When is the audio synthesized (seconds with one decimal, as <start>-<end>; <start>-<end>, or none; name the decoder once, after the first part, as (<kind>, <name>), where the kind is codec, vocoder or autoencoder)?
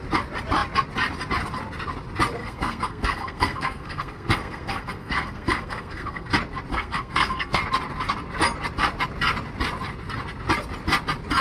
2.4-6.3 (codec, SNAC); 6.7-7.6